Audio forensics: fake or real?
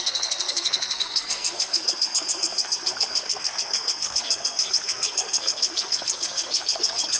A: fake